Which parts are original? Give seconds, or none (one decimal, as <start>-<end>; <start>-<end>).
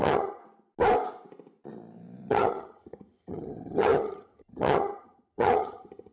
0.4-2.3